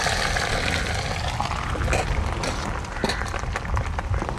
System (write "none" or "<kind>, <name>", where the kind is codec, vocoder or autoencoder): none